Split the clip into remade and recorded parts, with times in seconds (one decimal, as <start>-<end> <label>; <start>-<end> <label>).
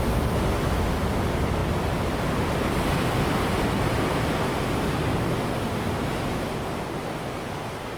0.0-8.0 recorded